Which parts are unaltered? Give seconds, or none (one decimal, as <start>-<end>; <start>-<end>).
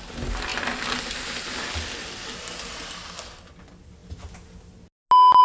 0.0-0.5; 2.4-5.4